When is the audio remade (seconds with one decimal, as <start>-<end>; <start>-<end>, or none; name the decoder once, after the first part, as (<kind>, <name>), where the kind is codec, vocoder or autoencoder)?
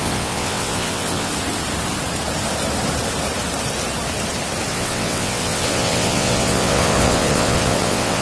0.0-1.3 (vocoder, WaveNeXt); 4.7-8.2